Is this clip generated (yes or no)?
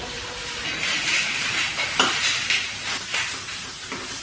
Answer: yes